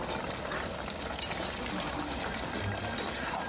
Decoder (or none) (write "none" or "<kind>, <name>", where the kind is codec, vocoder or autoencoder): none